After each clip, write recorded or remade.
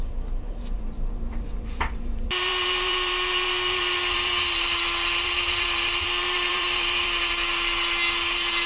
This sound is remade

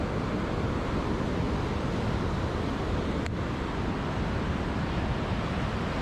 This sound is recorded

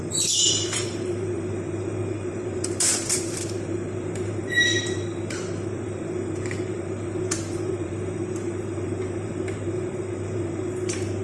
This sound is remade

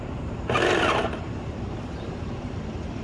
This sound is remade